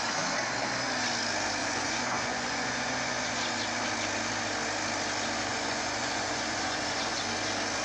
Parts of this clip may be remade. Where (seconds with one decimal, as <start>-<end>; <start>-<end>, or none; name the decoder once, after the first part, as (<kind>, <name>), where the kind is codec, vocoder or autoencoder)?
1.6-3.4 (vocoder, Vocos); 5.5-7.2